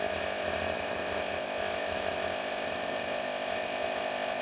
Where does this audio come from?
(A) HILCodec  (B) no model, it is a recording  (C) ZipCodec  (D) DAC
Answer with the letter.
C